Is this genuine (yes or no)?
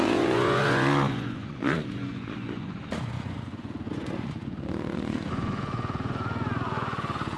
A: no